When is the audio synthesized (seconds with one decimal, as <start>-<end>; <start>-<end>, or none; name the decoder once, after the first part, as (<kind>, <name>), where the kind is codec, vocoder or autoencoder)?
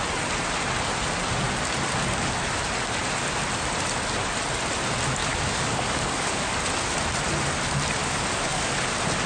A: 5.2-6.5 (codec, DAC); 8.0-8.7